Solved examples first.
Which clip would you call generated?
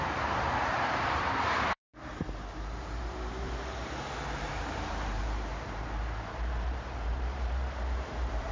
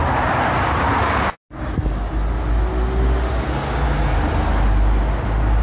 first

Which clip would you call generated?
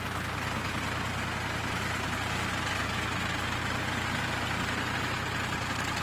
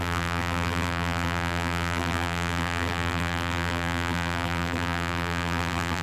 second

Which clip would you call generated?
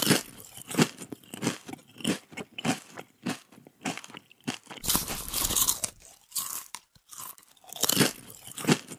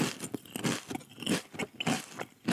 first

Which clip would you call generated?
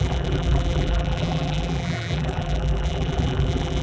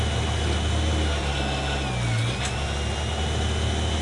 first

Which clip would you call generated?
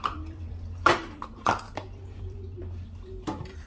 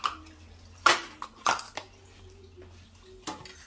first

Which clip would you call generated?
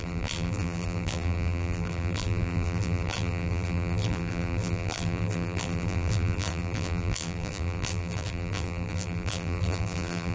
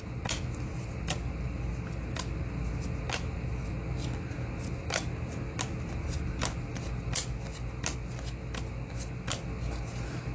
first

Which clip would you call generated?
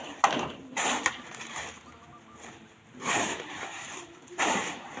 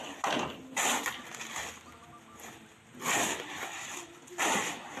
first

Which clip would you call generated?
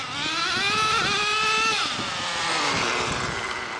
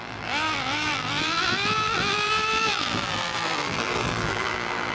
second